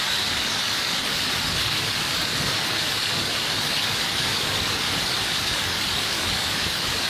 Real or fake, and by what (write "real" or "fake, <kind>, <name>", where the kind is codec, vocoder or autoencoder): fake, codec, DAC